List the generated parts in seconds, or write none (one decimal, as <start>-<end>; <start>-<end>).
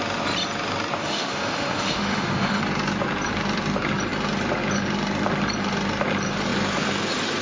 1.0-2.6